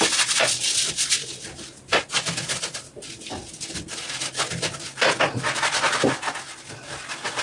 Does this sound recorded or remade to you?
recorded